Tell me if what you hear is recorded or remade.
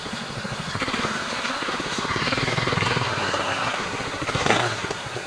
remade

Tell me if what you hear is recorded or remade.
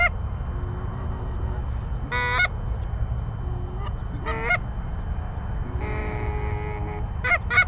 recorded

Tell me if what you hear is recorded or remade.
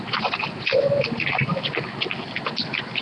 recorded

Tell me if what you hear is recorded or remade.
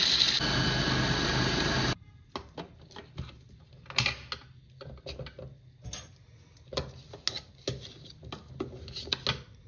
recorded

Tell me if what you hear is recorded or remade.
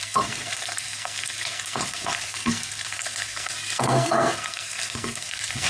remade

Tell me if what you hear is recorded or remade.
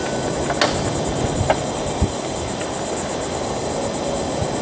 recorded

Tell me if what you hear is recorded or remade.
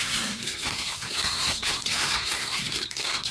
remade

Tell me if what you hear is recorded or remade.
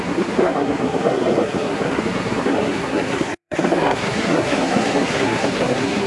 remade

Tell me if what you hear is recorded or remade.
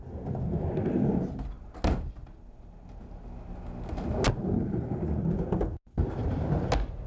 recorded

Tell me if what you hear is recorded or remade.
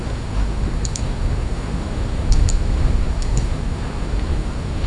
remade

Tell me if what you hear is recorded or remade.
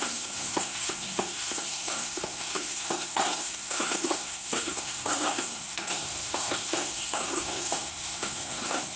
remade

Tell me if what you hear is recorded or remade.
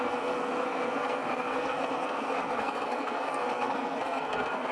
remade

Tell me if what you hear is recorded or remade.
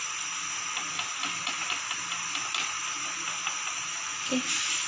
recorded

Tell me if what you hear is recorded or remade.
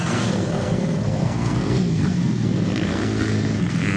remade